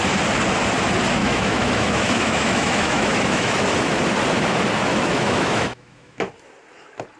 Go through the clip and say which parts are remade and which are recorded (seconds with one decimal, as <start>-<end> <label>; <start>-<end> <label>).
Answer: 0.0-1.2 recorded; 1.2-3.6 remade; 3.6-4.9 recorded; 4.9-6.3 remade; 6.3-7.2 recorded